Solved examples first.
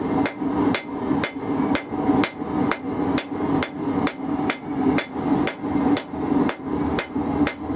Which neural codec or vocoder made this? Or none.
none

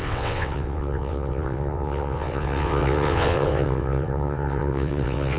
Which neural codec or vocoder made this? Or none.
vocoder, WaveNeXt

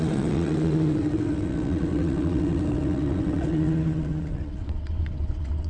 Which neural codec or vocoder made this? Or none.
vocoder, WaveNeXt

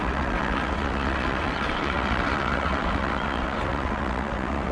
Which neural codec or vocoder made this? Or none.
vocoder, WaveNeXt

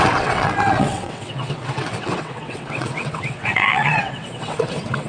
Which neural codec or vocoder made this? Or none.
vocoder, WaveNeXt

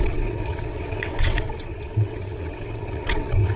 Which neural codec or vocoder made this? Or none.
vocoder, WaveNeXt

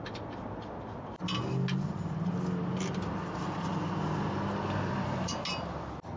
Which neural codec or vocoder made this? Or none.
none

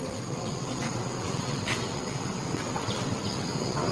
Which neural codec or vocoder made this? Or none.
vocoder, WaveNeXt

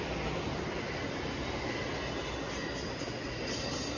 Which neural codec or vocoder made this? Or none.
none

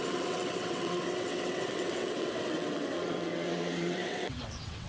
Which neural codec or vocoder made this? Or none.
vocoder, WaveNeXt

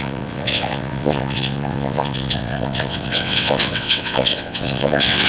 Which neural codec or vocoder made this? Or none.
vocoder, WaveNeXt